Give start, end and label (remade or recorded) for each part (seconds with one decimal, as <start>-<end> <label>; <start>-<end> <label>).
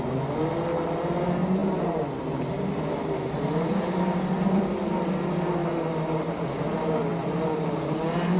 0.0-8.4 recorded